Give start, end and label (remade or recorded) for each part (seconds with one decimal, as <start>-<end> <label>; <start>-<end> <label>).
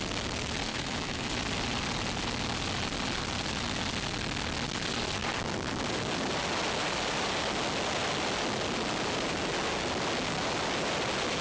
0.0-0.7 recorded; 0.7-1.3 remade; 1.3-11.4 recorded